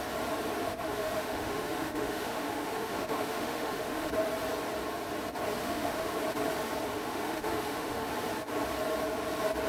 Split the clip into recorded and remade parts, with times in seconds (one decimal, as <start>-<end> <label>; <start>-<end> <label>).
0.0-0.6 recorded; 0.6-4.1 remade; 4.1-5.6 recorded; 5.6-6.2 remade; 6.2-6.9 recorded; 6.9-8.1 remade; 8.1-9.7 recorded